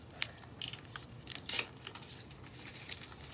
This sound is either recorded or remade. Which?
recorded